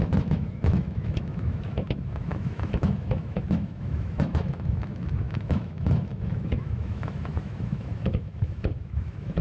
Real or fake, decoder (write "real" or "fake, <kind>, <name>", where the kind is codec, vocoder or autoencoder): fake, autoencoder, DAC-VAE